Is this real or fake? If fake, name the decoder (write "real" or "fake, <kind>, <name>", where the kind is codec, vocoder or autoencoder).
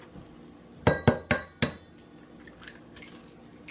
real